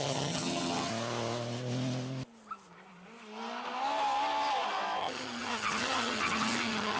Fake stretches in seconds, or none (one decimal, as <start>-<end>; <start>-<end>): 0.0-0.9; 5.0-7.0